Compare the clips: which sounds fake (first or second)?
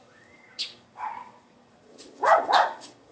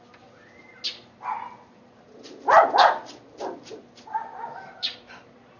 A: first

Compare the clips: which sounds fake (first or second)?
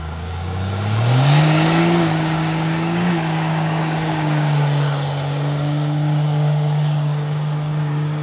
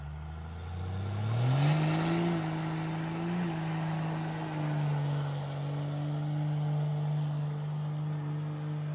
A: first